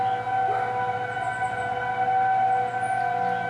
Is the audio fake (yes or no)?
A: no